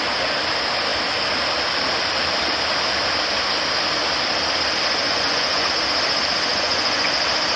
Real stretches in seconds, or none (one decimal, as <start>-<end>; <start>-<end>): 0.0-5.0; 5.7-6.5; 7.1-7.6